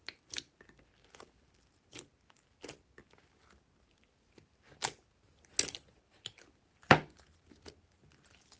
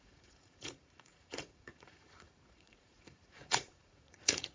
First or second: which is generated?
second